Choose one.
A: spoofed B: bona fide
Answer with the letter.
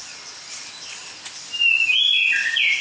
B